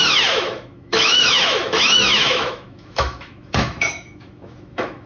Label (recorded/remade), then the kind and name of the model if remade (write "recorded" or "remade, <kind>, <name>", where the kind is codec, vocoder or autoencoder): remade, autoencoder, DAC-VAE